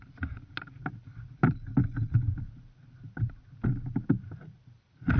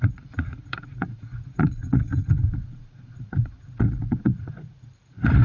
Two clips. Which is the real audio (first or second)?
first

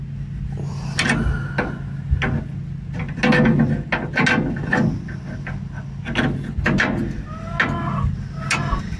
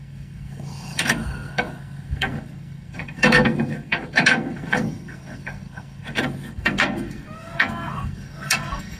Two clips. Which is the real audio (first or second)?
first